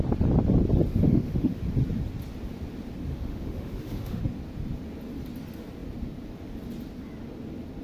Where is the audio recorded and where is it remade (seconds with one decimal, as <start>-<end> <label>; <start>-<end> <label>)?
0.0-0.9 recorded; 0.9-1.6 remade; 1.6-3.1 recorded; 3.1-4.2 remade; 4.2-7.8 recorded